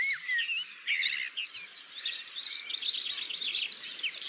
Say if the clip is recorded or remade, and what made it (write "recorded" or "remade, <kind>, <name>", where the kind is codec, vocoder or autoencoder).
recorded